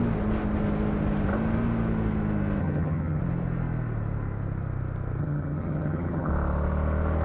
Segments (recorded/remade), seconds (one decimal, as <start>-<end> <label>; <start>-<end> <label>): 0.0-2.6 recorded; 2.6-3.2 remade; 3.2-5.2 recorded; 5.2-6.3 remade; 6.3-7.2 recorded

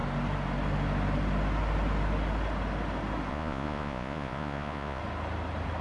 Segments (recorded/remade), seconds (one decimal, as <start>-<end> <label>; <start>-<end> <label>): 0.0-3.3 recorded; 3.3-5.0 remade; 5.0-5.8 recorded

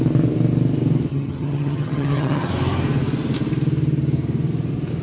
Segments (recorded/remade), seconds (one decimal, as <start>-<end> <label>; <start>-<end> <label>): 0.0-1.1 recorded; 1.1-2.5 remade; 2.5-5.0 recorded

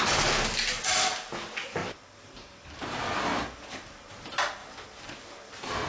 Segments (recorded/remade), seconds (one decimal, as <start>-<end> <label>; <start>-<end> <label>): 0.0-1.8 recorded; 1.8-2.9 remade; 2.9-5.9 recorded

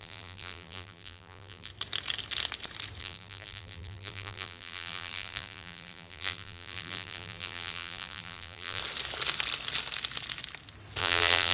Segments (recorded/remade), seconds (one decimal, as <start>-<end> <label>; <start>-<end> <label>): 0.0-1.7 remade; 1.7-3.0 recorded; 3.0-8.8 remade; 8.8-11.0 recorded; 11.0-11.5 remade

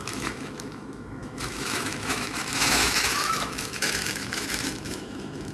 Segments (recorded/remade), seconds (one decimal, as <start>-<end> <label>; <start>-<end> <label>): 0.0-5.5 remade

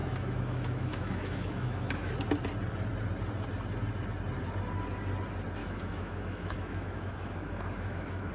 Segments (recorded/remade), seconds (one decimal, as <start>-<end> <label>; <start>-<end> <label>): 0.0-2.1 remade; 2.1-5.6 recorded; 5.6-8.3 remade